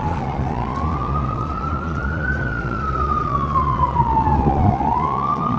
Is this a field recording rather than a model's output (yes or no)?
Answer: no